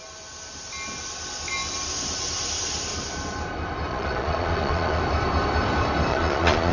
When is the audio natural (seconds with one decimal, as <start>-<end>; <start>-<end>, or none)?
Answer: 0.0-3.9; 5.0-6.1